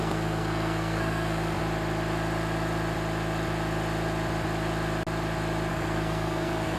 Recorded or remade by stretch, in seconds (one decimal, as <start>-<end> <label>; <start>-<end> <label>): 0.0-1.6 remade; 1.6-5.7 recorded; 5.7-6.8 remade